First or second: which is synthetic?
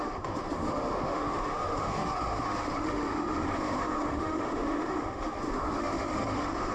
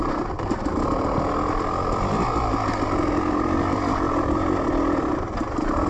first